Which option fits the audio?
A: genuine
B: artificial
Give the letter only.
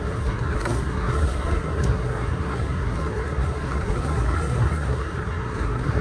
B